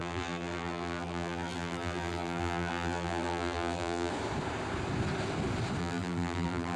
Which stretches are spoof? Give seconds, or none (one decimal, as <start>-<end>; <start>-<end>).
0.0-4.1; 5.8-6.8